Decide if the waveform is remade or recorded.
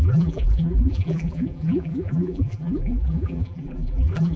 remade